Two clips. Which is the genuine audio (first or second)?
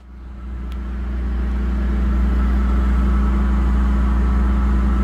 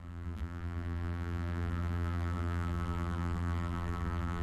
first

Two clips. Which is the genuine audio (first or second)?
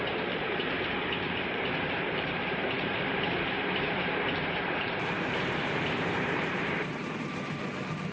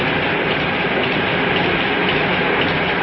second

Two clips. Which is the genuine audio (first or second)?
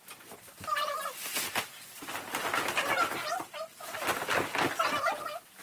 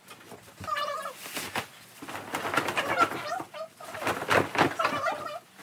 second